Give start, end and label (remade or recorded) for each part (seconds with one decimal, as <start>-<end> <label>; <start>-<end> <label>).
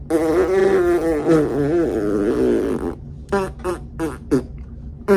0.0-5.2 recorded